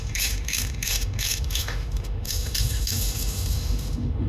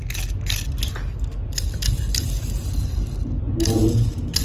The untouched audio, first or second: second